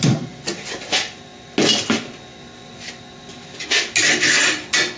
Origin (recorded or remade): recorded